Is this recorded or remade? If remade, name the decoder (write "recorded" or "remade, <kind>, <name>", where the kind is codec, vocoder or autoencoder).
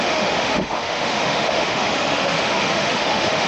remade, autoencoder, DAC-VAE